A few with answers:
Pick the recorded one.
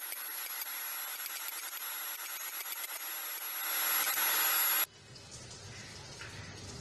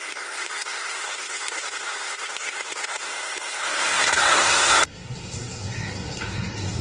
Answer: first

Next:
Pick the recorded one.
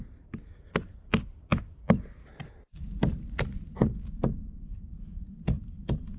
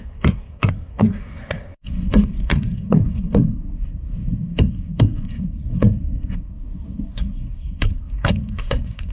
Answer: first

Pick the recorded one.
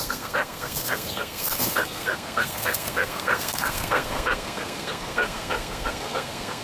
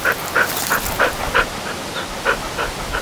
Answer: second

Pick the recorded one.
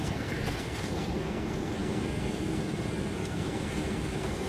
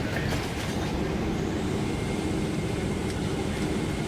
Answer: second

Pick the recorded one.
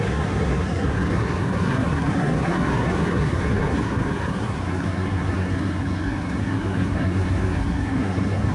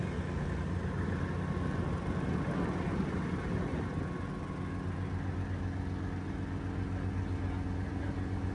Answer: second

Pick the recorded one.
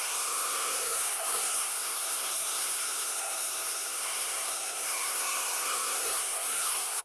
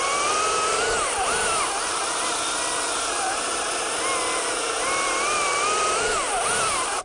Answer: second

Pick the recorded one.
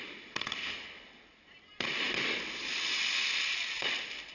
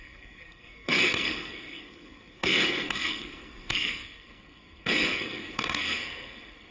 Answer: first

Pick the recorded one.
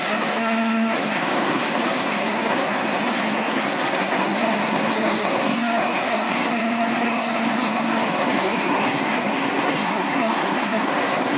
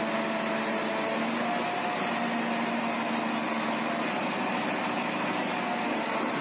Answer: second